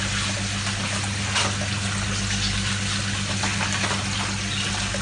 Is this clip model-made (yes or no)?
no